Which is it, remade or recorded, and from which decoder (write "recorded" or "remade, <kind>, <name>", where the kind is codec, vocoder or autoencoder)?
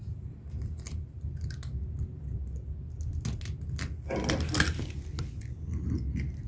recorded